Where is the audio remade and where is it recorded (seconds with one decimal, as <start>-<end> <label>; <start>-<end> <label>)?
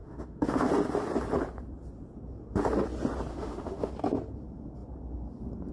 0.0-0.7 remade; 0.7-3.3 recorded; 3.3-3.9 remade; 3.9-5.7 recorded